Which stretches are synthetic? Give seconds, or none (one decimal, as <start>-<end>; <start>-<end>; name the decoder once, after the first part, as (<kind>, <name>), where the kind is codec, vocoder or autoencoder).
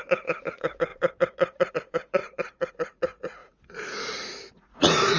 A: 0.0-0.9 (vocoder, Vocos); 1.7-2.2; 2.7-5.2